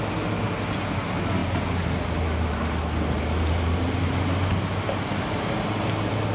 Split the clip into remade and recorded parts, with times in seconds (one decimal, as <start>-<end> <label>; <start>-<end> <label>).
0.0-6.3 recorded